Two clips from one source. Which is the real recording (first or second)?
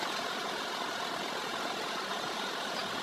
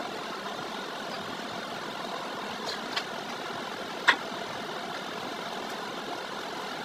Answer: second